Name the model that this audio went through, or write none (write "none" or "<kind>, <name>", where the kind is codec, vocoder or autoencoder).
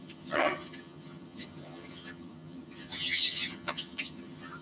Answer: vocoder, HiFi-GAN